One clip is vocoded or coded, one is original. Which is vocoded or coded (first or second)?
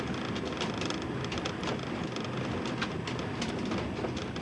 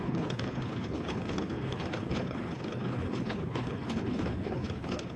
second